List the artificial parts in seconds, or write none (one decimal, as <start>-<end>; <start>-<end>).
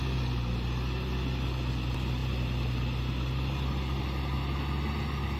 none